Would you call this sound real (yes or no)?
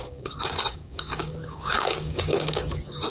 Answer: no